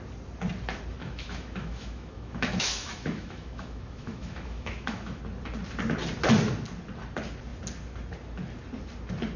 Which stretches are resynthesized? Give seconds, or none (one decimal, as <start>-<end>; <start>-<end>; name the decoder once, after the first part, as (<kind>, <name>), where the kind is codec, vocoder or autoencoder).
1.0-5.2 (autoencoder, DAC-VAE)